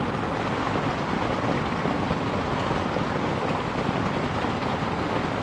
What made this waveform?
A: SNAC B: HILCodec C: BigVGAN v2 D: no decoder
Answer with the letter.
D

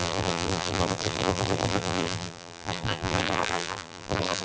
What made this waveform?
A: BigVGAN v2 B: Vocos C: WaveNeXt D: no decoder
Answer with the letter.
A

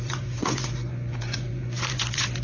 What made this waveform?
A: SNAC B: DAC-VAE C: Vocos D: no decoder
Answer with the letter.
C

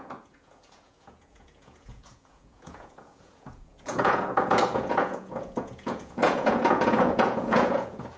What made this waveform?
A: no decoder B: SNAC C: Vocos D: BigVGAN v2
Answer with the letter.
C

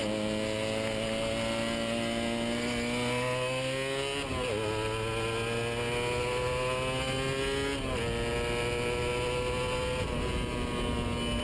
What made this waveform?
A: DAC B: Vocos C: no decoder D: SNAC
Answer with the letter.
C